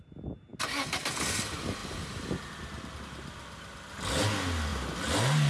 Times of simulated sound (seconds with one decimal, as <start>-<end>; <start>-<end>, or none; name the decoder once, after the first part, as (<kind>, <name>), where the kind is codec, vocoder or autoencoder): none